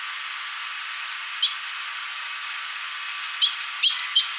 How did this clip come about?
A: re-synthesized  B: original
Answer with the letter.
B